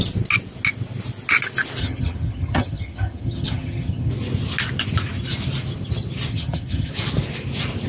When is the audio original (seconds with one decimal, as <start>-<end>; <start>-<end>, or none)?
0.0-1.8; 4.1-6.3; 6.9-7.9